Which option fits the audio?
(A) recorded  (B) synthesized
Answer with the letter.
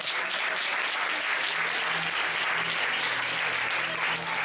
A